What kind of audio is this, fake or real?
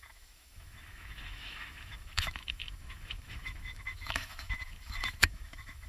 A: fake